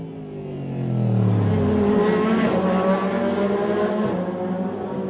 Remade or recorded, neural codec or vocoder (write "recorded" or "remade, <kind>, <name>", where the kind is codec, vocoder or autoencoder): recorded